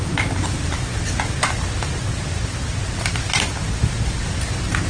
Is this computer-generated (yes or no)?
no